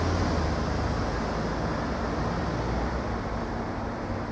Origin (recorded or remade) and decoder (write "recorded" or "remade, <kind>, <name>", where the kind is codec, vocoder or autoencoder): recorded